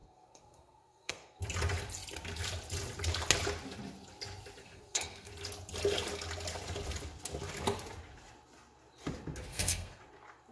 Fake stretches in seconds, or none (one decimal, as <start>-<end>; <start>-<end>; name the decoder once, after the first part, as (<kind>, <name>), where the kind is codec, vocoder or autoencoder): 0.0-1.4 (codec, SNAC); 4.6-5.3; 9.5-10.0